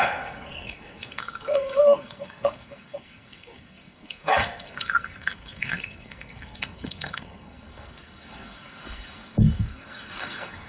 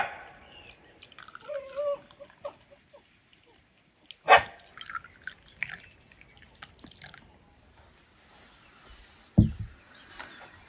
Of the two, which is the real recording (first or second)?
second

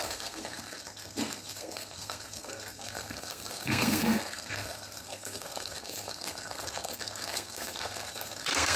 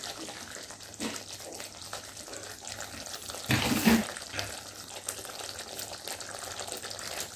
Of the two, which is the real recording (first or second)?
second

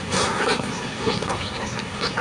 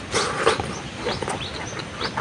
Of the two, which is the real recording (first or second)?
second